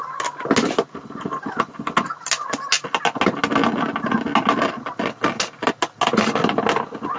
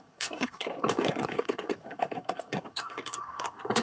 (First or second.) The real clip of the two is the first